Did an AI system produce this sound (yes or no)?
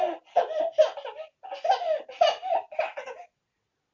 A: no